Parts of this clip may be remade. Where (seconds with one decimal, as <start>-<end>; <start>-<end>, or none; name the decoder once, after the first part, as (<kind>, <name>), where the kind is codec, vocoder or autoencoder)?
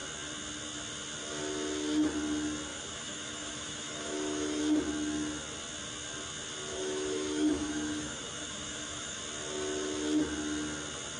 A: 2.7-4.6 (autoencoder, DAC-VAE); 6.7-9.2